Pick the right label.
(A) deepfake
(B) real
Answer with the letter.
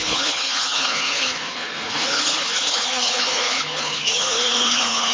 A